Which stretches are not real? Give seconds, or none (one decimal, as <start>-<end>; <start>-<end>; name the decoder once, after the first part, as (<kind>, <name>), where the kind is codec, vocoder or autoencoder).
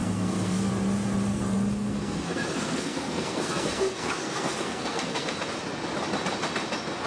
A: 0.0-0.7 (codec, SNAC); 1.3-5.4